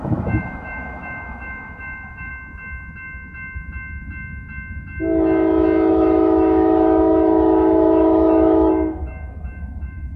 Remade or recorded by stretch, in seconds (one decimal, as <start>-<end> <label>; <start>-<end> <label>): 0.0-2.3 remade; 2.3-5.9 recorded; 5.9-9.0 remade; 9.0-9.6 recorded; 9.6-10.2 remade